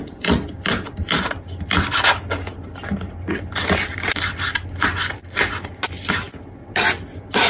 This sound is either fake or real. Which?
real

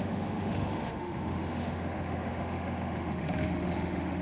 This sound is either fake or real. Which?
fake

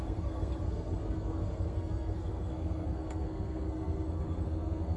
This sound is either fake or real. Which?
fake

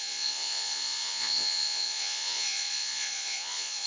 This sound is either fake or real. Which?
fake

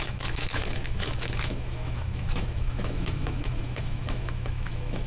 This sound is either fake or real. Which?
fake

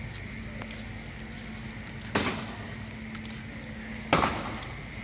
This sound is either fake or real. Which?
real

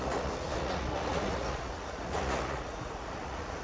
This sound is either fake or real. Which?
fake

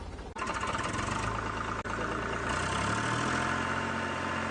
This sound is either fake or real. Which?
real